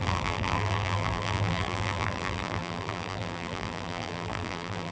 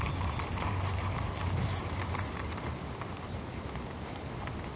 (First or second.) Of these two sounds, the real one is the second